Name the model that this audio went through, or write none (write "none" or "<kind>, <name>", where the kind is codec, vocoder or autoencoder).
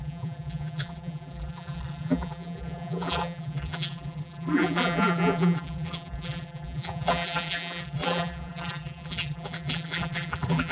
vocoder, BigVGAN v2